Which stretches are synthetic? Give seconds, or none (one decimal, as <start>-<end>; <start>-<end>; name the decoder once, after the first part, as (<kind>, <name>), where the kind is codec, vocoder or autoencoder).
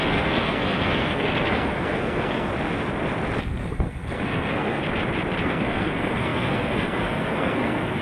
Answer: 0.0-2.5 (codec, SNAC); 3.4-4.8; 5.4-8.0